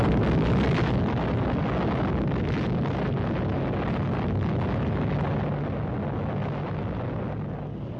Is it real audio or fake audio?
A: real